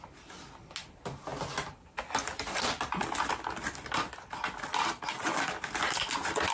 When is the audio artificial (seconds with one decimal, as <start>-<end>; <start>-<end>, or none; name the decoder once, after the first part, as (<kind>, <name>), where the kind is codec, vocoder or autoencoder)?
none